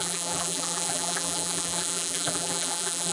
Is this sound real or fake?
fake